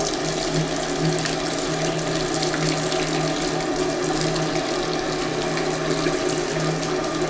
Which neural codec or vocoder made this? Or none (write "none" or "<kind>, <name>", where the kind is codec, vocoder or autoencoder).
none